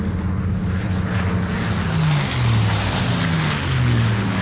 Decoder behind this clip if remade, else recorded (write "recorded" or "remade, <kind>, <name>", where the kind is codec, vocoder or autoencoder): recorded